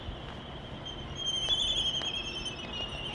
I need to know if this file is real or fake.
real